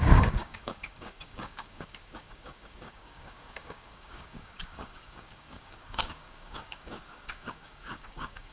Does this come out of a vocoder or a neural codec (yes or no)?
yes